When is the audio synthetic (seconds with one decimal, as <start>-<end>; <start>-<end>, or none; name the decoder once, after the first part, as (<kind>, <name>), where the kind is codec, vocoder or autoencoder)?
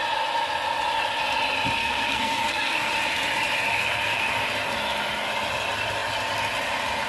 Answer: 1.8-2.9 (codec, SNAC); 3.7-4.3